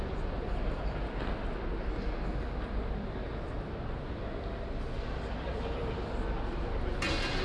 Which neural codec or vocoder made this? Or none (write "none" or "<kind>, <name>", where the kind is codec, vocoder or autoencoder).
none